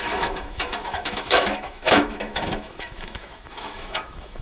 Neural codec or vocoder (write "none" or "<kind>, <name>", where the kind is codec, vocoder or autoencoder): autoencoder, DAC-VAE